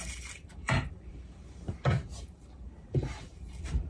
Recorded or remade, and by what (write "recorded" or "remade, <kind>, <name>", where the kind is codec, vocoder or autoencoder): remade, vocoder, BigVGAN v2